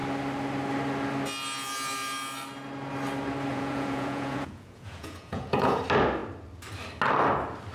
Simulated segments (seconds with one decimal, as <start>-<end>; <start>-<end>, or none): 3.5-5.8